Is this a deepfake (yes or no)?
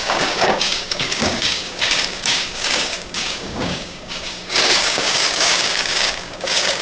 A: yes